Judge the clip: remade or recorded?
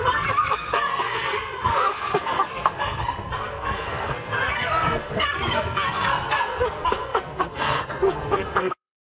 remade